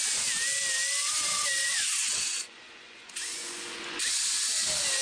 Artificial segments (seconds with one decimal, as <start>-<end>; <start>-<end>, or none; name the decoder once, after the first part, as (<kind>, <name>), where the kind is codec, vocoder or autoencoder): 1.0-4.0 (vocoder, Vocos)